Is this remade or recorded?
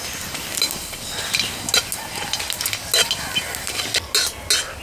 recorded